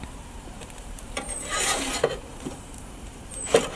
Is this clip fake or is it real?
fake